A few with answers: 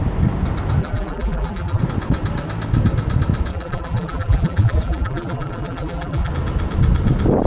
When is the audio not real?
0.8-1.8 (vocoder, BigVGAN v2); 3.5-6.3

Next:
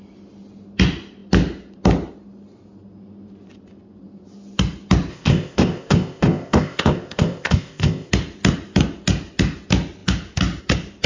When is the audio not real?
5.1-8.1 (codec, ZipCodec)